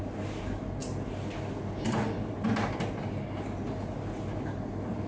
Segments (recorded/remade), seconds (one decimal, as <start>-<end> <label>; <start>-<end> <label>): 0.0-5.1 recorded